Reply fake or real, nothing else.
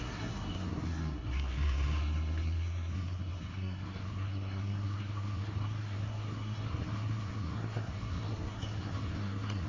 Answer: fake